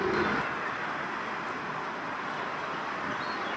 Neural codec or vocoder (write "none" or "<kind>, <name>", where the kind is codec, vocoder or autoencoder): none